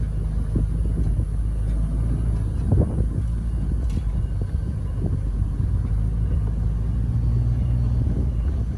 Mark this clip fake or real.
real